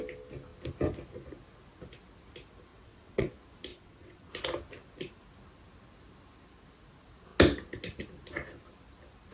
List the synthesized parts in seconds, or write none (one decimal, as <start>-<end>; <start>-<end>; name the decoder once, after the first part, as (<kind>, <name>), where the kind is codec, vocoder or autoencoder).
2.7-3.3 (vocoder, WaveNeXt); 3.7-4.3